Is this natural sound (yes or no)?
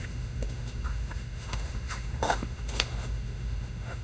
no